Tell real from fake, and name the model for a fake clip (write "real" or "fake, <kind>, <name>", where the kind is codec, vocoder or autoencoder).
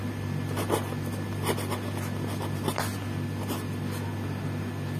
real